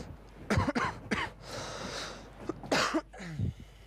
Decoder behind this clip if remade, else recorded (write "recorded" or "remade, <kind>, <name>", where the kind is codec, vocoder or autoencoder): recorded